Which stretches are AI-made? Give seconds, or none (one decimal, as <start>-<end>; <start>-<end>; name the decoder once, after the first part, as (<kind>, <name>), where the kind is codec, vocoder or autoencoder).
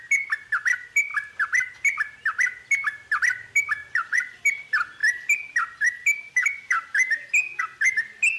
3.8-4.4 (vocoder, Vocos)